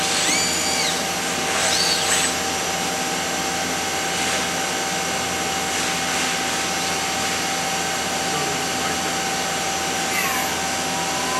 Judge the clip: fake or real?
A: real